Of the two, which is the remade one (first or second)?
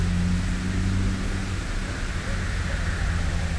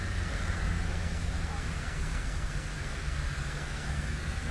second